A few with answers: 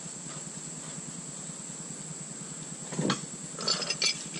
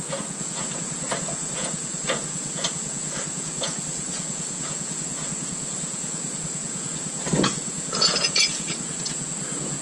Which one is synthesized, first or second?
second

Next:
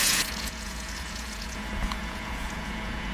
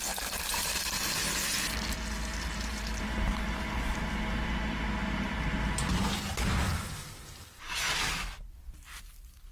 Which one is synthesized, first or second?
first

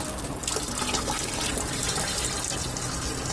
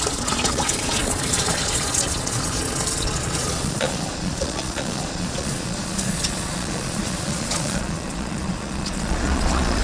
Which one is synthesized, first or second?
second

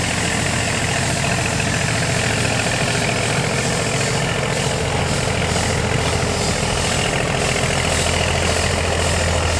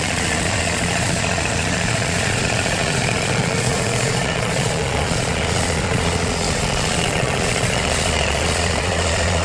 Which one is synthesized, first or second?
second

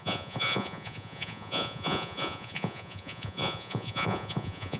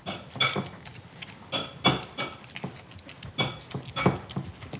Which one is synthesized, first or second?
first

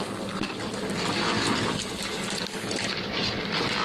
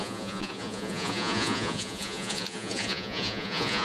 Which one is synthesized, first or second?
second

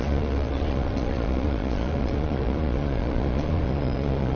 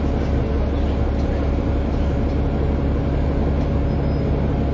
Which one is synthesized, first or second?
first